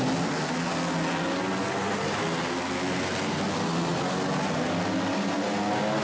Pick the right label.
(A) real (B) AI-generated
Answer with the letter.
A